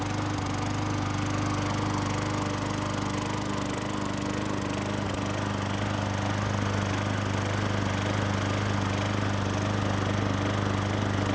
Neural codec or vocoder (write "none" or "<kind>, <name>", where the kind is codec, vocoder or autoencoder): none